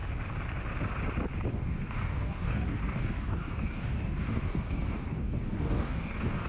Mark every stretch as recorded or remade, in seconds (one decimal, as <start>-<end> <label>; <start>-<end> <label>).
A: 0.0-1.5 recorded; 1.5-6.5 remade